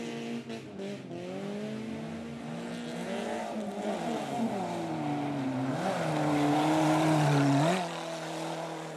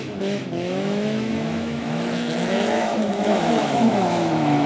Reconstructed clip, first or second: second